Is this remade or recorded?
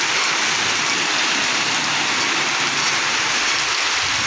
recorded